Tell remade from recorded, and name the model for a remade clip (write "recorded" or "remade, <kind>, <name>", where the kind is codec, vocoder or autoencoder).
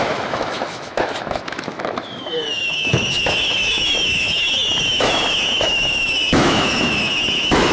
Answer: remade, autoencoder, DAC-VAE